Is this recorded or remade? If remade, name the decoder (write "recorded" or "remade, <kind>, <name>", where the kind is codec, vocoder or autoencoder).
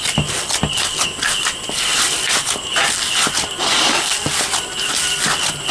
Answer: recorded